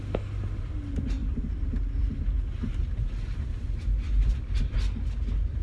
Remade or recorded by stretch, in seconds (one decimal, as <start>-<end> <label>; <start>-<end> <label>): 0.0-5.6 recorded